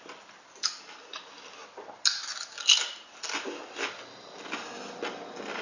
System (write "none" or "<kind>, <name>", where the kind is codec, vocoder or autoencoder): none